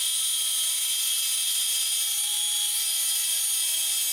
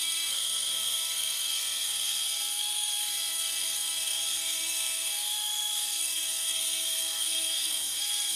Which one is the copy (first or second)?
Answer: second